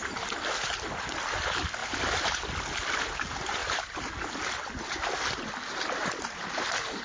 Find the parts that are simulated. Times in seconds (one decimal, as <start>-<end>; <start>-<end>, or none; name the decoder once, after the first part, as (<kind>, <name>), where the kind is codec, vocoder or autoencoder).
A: 3.6-4.8 (vocoder, BigVGAN v2)